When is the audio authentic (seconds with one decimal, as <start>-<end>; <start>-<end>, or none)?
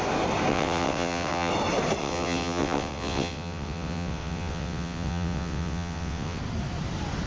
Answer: 0.0-0.5; 1.5-2.0; 6.4-7.3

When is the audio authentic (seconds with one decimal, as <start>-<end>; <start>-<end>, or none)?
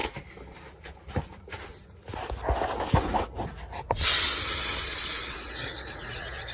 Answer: 0.0-3.9